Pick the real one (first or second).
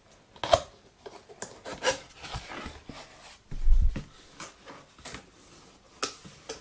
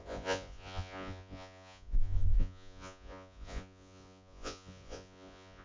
first